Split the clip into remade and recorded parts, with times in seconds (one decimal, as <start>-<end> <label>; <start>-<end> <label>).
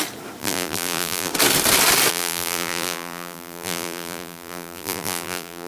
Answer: 0.0-0.4 recorded; 0.4-1.3 remade; 1.3-2.1 recorded; 2.1-5.7 remade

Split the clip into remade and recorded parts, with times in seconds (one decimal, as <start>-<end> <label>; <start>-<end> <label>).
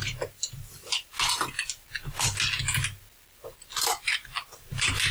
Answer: 0.0-1.1 remade; 1.1-4.2 recorded; 4.2-5.1 remade